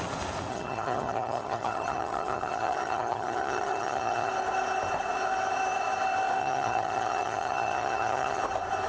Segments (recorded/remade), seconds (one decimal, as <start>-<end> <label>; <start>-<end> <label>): 0.0-0.5 recorded; 0.5-4.3 remade; 4.3-6.4 recorded; 6.4-8.4 remade; 8.4-8.9 recorded